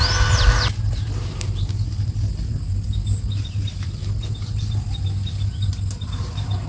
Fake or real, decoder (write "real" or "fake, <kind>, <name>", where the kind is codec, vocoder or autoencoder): real